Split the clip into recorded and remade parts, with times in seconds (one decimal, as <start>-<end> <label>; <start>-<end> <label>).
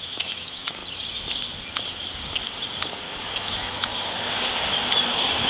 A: 0.0-0.8 remade; 0.8-3.2 recorded; 3.2-3.9 remade; 3.9-5.5 recorded